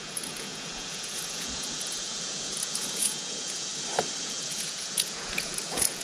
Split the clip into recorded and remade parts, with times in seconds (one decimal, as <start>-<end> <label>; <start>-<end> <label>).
0.0-3.7 remade; 3.7-4.2 recorded; 4.2-6.0 remade